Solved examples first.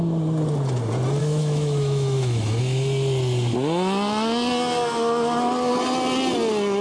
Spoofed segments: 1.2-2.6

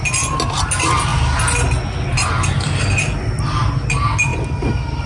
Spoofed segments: none